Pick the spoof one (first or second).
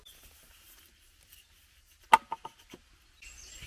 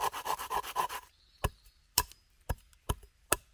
second